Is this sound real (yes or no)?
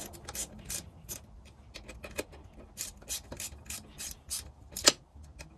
yes